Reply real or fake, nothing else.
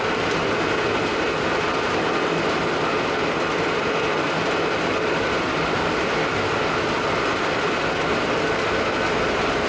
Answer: real